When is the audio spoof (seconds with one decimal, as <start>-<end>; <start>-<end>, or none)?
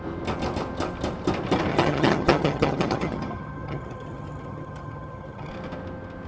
1.7-5.5